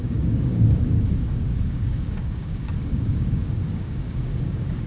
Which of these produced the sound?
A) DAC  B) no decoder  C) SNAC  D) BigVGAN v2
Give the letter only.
A